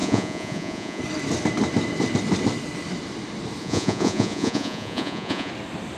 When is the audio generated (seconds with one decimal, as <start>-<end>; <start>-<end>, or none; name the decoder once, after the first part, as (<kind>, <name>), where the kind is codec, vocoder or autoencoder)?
0.0-1.0 (vocoder, Vocos); 3.6-5.5